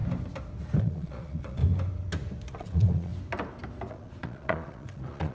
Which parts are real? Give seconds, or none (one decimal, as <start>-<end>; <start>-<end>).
0.0-0.8; 1.6-2.5; 3.1-3.9